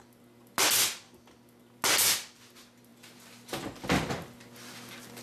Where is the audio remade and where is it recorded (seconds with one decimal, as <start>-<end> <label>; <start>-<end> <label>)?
0.0-5.2 recorded